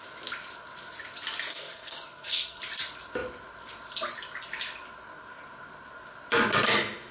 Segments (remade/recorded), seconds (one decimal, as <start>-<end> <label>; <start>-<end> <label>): 0.0-1.5 recorded; 1.5-2.6 remade; 2.6-7.1 recorded